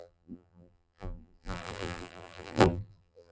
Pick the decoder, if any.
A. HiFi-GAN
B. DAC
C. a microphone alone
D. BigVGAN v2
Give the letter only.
D